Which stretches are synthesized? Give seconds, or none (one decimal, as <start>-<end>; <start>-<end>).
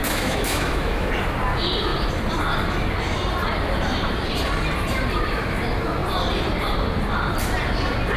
0.0-1.1